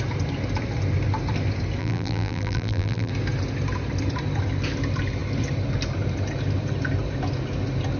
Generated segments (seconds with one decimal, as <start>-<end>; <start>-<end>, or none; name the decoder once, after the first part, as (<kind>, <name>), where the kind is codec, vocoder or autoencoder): 1.8-3.1 (vocoder, BigVGAN v2)